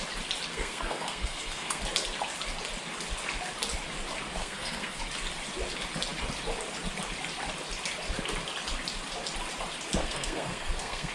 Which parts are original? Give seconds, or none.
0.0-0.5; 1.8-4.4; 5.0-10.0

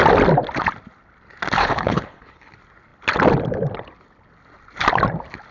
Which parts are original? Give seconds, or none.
0.0-1.6; 2.5-5.5

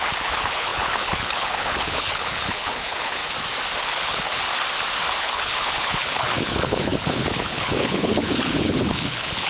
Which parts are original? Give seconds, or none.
3.2-3.8; 4.4-5.2

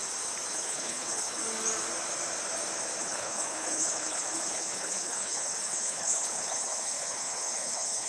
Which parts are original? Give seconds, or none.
0.0-0.5; 1.4-3.0

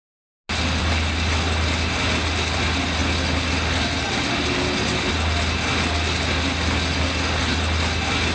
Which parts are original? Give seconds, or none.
0.0-8.3

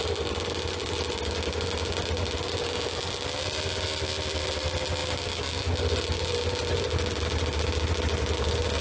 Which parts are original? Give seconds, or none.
0.0-8.8

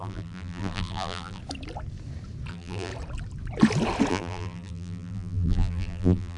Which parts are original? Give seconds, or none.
1.4-2.5; 2.9-4.1